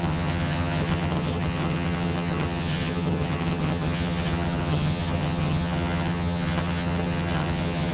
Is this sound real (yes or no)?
no